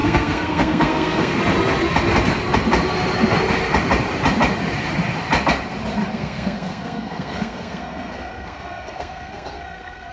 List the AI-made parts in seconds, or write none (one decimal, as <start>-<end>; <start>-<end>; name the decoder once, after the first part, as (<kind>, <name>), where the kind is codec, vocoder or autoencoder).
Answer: 0.0-1.4 (codec, SNAC); 6.1-10.1